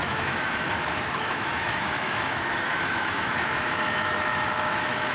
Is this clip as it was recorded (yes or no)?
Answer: no